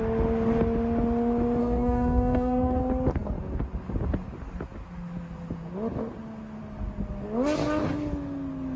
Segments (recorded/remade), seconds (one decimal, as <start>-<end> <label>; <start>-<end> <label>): 0.0-1.6 recorded; 1.6-2.8 remade; 2.8-8.8 recorded